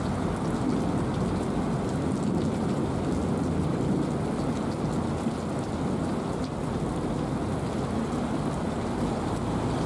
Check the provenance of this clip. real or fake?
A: real